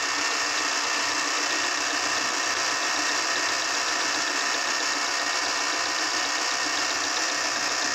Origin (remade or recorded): recorded